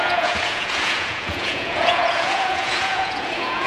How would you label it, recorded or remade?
remade